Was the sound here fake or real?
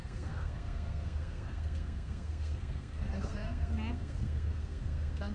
fake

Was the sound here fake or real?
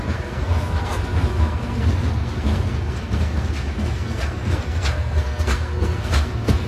fake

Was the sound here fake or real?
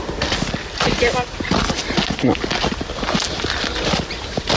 real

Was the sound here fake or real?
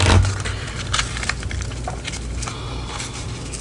real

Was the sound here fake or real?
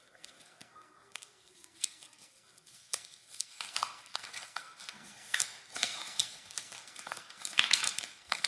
fake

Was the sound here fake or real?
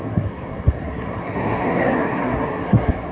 fake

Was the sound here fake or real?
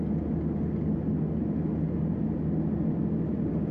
real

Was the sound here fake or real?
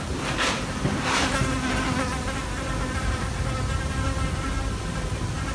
real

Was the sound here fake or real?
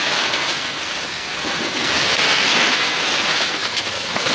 fake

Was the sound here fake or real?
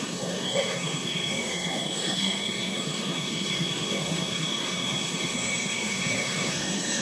fake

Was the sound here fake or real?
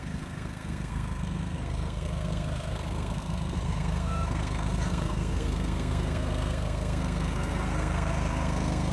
fake